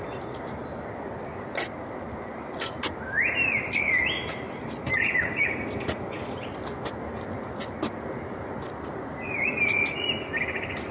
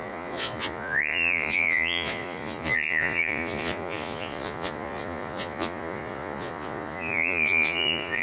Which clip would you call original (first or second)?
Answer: first